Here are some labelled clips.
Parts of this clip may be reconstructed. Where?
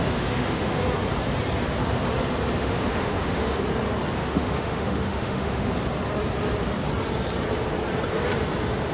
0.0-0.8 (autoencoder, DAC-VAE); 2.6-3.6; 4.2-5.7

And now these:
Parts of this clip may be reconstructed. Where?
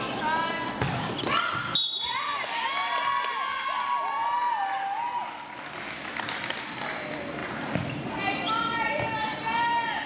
none